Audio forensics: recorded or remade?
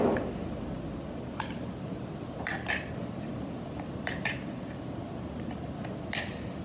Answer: remade